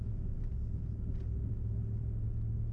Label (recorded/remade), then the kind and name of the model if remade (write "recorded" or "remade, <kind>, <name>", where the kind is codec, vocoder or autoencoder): recorded